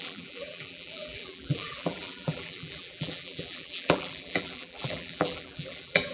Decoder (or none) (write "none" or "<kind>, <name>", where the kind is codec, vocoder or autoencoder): vocoder, BigVGAN v2